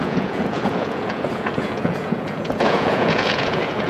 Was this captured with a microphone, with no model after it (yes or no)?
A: no